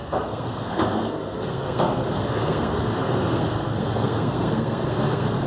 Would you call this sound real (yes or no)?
no